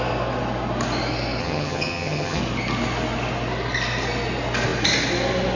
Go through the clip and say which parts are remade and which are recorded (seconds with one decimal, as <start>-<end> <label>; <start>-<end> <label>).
0.0-1.4 recorded; 1.4-2.4 remade; 2.4-5.6 recorded